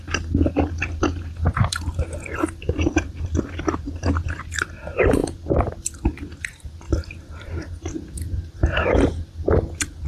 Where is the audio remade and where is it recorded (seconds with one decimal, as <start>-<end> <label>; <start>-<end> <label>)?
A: 0.0-10.1 recorded